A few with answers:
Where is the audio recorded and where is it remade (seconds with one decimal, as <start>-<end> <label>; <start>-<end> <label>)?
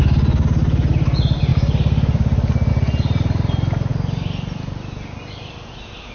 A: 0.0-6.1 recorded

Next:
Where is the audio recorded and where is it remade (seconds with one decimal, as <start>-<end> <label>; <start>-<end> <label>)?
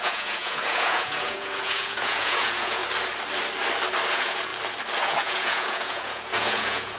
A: 0.0-2.8 remade; 2.8-4.1 recorded; 4.1-4.5 remade; 4.5-5.0 recorded; 5.0-7.0 remade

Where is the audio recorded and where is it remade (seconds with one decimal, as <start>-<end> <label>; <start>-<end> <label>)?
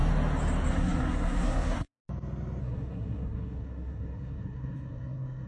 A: 0.0-0.7 recorded; 0.7-2.0 remade; 2.0-2.6 recorded; 2.6-5.5 remade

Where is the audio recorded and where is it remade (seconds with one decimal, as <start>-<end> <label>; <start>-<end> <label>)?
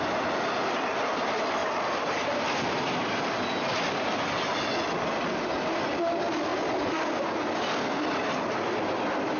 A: 0.0-9.4 recorded